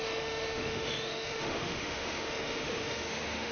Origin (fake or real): fake